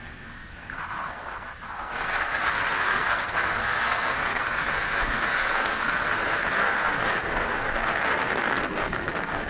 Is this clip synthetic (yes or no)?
yes